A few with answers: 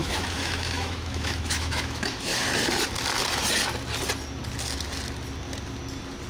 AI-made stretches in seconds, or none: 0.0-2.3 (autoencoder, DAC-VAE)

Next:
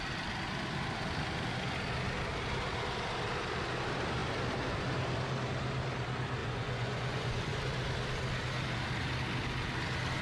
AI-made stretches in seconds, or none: 6.4-7.6 (vocoder, Vocos)

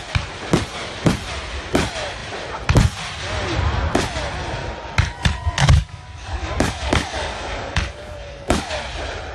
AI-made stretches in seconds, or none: 5.6-8.7 (codec, DAC)

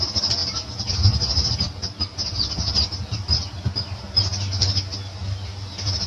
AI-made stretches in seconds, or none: none

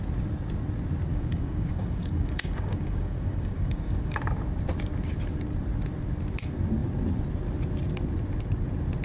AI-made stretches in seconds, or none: 1.1-4.2 (codec, DAC)

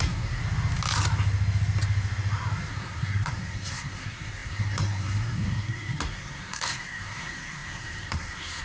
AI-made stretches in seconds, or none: 0.0-0.4 (codec, SNAC); 2.7-8.6

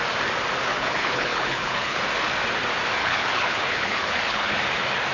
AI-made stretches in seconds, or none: 0.6-2.0 (codec, HILCodec); 3.0-4.6